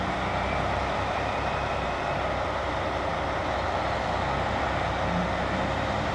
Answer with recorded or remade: recorded